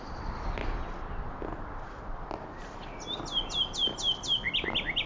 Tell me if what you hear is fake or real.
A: real